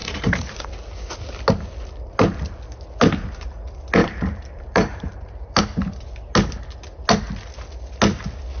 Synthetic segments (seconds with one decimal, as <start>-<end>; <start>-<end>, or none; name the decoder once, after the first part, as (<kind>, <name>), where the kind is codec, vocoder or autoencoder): 0.0-0.7 (vocoder, BigVGAN v2); 4.0-5.6